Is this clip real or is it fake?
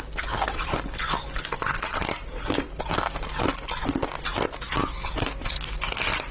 real